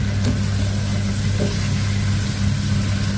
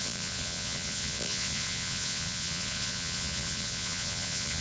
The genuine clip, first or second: first